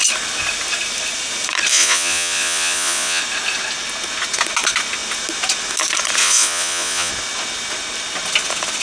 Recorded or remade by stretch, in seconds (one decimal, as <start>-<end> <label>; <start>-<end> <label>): 0.0-1.7 recorded; 1.7-3.2 remade; 3.2-6.2 recorded; 6.2-7.1 remade; 7.1-8.8 recorded